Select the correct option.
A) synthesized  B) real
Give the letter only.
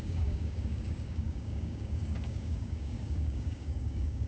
A